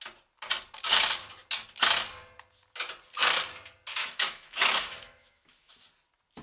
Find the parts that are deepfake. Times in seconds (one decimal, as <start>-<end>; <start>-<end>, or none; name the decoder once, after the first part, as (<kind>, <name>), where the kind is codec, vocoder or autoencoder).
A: 4.0-5.8 (autoencoder, DAC-VAE)